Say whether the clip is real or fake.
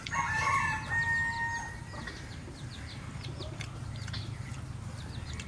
real